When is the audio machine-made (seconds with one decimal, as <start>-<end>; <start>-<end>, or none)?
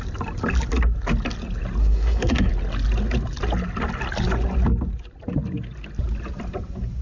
1.8-2.5